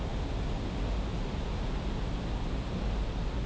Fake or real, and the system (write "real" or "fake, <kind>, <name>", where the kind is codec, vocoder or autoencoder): real